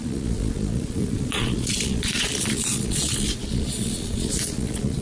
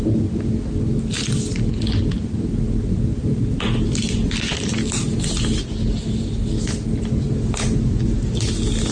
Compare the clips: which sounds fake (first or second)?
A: first